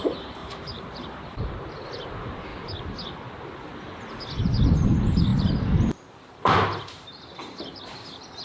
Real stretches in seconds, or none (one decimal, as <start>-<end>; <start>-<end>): 0.0-0.4; 1.9-5.3; 7.8-8.4